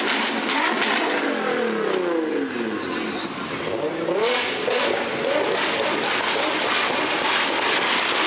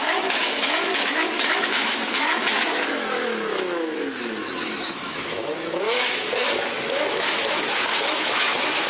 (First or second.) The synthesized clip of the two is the second